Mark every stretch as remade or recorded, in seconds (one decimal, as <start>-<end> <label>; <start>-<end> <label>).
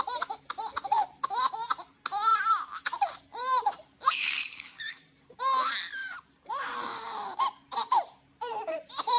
0.0-2.3 recorded; 2.3-5.4 remade; 5.4-6.0 recorded; 6.0-6.5 remade; 6.5-6.9 recorded; 6.9-9.2 remade